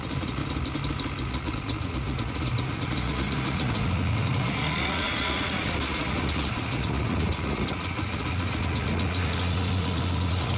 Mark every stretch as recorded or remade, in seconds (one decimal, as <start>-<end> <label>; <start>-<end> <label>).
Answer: 0.0-0.4 remade; 0.4-1.2 recorded; 1.2-10.6 remade